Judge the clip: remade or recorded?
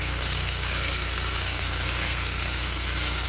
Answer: remade